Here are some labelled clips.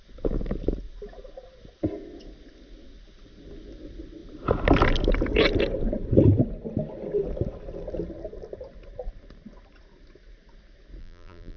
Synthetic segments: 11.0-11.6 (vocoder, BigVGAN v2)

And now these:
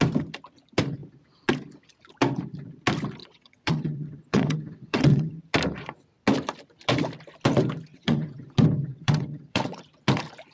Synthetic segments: 3.2-5.4 (vocoder, WaveNeXt); 7.9-8.4; 8.9-9.8

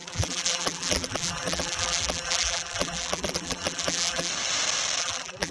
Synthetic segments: 0.0-4.3 (vocoder, BigVGAN v2); 5.0-5.5

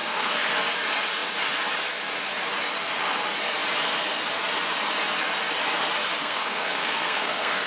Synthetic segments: 0.0-0.5 (codec, SNAC); 6.2-7.7

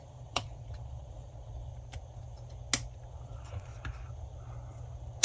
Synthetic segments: 0.0-1.7 (vocoder, Vocos); 3.1-3.7

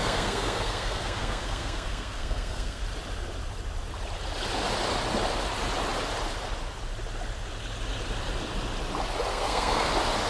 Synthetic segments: 0.0-2.8 (codec, SNAC); 9.3-9.9

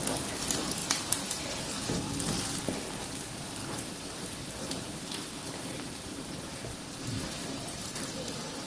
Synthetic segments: 0.8-1.4 (vocoder, BigVGAN v2); 3.6-8.7

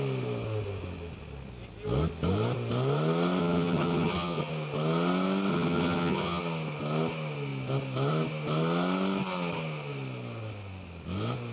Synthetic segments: 3.4-4.5 (vocoder, HiFi-GAN); 5.5-6.4